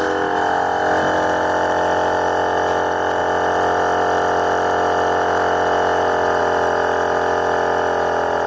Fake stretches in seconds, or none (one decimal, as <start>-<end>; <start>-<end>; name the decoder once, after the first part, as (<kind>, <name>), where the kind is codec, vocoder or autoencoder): 3.2-6.4 (vocoder, BigVGAN v2)